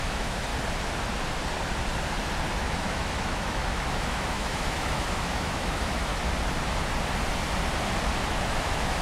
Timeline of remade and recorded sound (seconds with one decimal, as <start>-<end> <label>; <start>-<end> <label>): 0.0-0.5 remade; 0.5-2.5 recorded; 2.5-6.1 remade; 6.1-8.3 recorded; 8.3-9.0 remade